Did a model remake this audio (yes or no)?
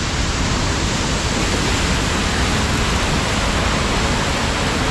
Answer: no